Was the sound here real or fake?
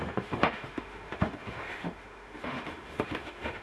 fake